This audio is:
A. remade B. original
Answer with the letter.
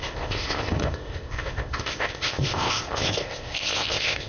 A